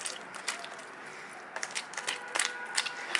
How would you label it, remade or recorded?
recorded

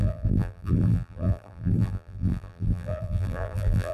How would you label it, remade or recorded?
remade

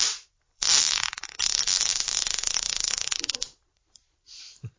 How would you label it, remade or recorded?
remade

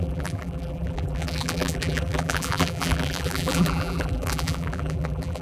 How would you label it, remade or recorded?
remade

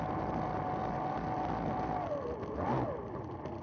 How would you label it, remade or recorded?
recorded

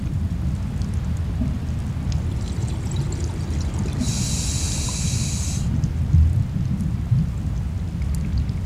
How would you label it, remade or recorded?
recorded